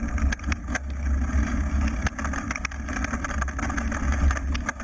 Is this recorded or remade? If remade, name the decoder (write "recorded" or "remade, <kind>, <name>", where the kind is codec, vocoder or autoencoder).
recorded